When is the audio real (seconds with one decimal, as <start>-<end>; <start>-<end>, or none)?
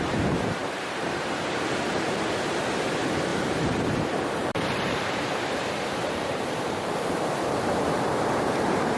none